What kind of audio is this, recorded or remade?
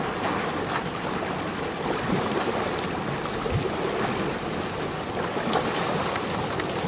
recorded